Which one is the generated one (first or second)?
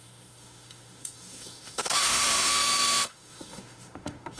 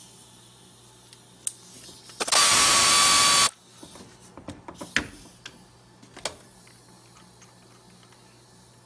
first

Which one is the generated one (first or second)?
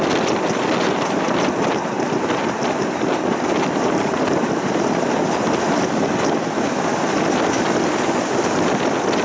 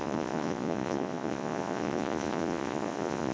second